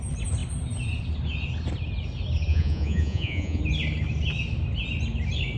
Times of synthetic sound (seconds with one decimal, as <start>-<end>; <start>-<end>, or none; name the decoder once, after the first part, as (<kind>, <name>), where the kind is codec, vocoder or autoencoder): 2.5-3.6 (vocoder, Vocos)